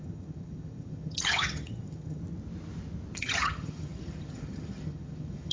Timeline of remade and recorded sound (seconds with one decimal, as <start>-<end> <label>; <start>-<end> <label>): 0.0-2.2 remade; 2.2-3.2 recorded; 3.2-5.5 remade